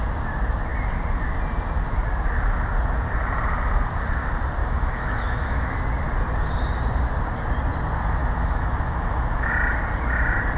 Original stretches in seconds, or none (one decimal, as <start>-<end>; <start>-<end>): 0.0-4.6; 5.8-8.2; 9.5-10.6

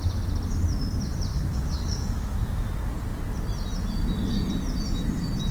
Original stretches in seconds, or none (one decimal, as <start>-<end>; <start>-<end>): 0.0-1.3; 2.7-5.5

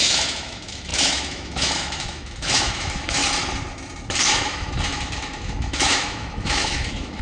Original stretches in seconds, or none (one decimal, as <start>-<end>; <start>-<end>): 3.2-4.3